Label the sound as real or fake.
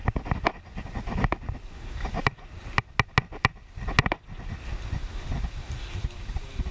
real